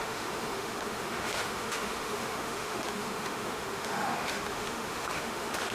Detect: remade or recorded remade